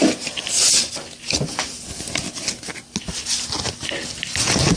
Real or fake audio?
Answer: real